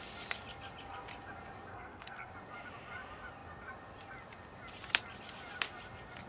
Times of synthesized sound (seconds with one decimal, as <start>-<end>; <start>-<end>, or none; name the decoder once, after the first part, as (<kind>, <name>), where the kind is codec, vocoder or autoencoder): 1.7-2.3 (codec, SNAC)